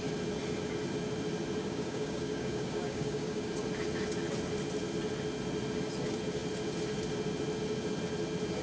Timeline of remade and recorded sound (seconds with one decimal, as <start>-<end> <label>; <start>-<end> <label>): 0.0-1.6 recorded; 1.6-3.5 remade; 3.5-8.6 recorded